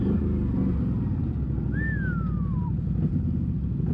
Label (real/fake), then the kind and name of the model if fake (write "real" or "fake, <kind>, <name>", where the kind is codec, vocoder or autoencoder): real